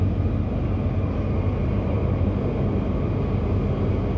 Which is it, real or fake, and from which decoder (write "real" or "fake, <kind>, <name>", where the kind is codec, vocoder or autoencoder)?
real